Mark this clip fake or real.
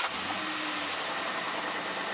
real